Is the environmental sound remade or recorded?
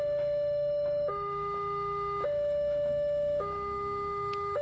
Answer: remade